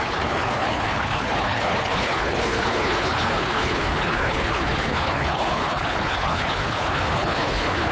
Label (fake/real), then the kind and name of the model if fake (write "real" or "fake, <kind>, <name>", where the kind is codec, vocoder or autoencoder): fake, codec, HILCodec